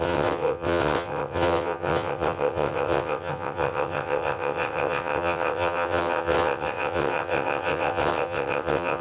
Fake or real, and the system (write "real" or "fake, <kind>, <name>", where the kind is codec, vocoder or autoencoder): fake, vocoder, WaveNeXt